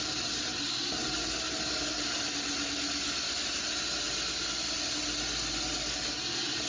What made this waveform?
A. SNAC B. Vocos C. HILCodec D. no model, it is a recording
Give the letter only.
D